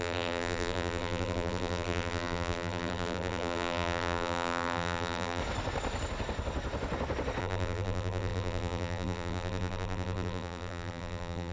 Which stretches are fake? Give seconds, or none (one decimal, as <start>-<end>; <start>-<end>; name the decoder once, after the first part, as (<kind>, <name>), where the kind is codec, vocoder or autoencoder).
0.0-5.4 (vocoder, BigVGAN v2); 7.4-11.5